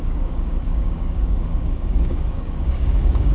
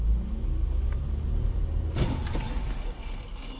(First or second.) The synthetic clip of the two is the first